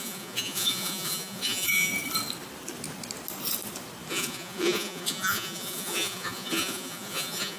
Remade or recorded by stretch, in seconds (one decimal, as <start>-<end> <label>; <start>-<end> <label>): 0.0-1.9 remade; 1.9-4.1 recorded; 4.1-7.6 remade